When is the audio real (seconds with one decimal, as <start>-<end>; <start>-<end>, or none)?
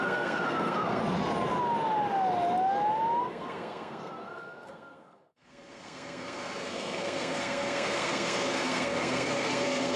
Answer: 1.0-3.2